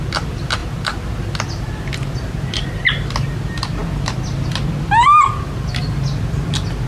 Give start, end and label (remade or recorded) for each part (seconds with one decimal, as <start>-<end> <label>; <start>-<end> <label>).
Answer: 0.0-6.9 recorded